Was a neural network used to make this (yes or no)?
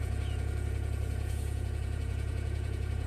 yes